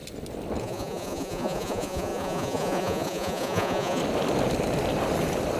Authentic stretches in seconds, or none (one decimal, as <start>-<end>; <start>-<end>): 0.0-0.6; 4.0-5.6